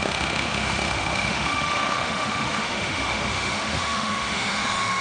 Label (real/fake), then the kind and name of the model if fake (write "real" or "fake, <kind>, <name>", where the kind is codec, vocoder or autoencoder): fake, autoencoder, DAC-VAE